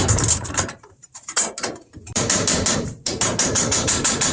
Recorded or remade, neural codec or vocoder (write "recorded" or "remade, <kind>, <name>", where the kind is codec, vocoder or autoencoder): remade, vocoder, BigVGAN v2